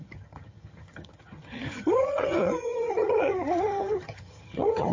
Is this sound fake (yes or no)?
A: yes